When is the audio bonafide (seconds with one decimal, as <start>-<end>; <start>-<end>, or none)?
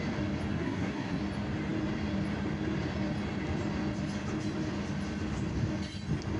0.0-0.5; 1.2-6.4